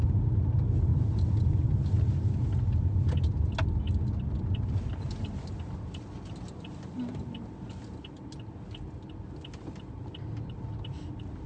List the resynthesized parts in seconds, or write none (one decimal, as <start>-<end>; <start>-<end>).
none